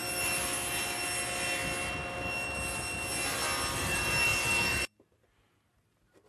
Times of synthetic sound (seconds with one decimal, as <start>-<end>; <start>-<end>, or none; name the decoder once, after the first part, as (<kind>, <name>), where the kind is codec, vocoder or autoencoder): 3.8-6.3 (vocoder, BigVGAN v2)